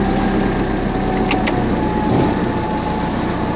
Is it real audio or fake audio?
real